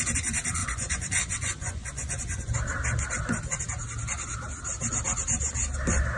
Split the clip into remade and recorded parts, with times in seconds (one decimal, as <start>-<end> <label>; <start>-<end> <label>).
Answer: 0.0-0.6 recorded; 0.6-2.5 remade; 2.5-6.2 recorded

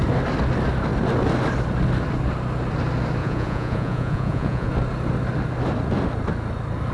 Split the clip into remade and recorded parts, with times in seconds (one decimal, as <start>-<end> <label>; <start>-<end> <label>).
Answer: 0.0-3.2 recorded; 3.2-4.7 remade; 4.7-6.9 recorded

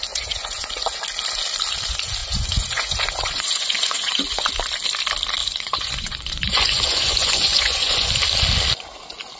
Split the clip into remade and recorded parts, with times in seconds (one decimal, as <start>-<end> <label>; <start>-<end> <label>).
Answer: 0.0-1.0 remade; 1.0-2.2 recorded; 2.2-4.5 remade; 4.5-5.4 recorded; 5.4-8.1 remade; 8.1-9.4 recorded